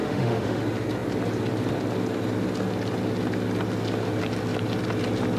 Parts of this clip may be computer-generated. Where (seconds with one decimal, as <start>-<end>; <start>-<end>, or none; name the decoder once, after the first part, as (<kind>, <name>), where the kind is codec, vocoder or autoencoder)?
0.0-0.6 (autoencoder, DAC-VAE)